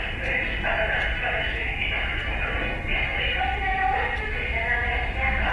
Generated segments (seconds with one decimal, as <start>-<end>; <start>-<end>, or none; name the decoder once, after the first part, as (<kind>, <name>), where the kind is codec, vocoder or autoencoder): none